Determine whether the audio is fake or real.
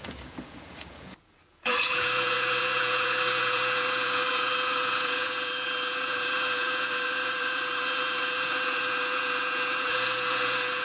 fake